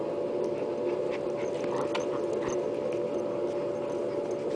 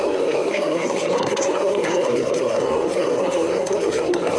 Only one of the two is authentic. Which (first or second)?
first